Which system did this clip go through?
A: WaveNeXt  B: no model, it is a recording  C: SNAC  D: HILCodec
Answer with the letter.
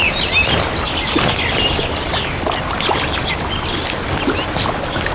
B